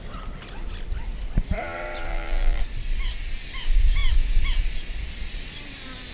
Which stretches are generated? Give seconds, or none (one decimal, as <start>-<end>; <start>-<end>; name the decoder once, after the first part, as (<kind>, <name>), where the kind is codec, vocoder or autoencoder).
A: 2.1-2.6 (vocoder, BigVGAN v2)